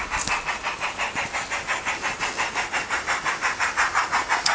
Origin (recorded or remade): recorded